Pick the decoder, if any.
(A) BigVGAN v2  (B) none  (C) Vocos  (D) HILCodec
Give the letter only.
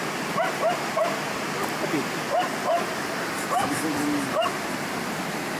B